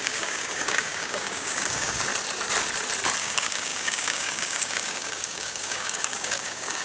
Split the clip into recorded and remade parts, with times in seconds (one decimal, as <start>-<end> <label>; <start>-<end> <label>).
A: 0.0-2.1 remade; 2.1-3.2 recorded; 3.2-6.8 remade